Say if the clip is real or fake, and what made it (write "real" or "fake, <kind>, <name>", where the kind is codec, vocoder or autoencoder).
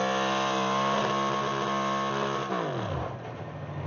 real